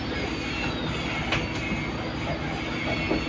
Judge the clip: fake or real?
real